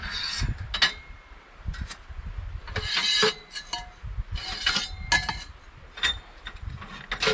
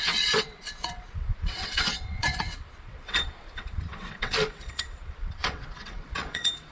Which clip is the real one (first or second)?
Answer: first